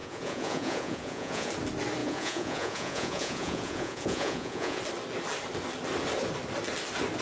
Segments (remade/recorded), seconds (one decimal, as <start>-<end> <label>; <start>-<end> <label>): 0.0-1.5 remade; 1.5-2.0 recorded; 2.0-4.8 remade; 4.8-7.2 recorded